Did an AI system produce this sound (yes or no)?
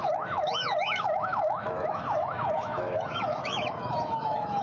yes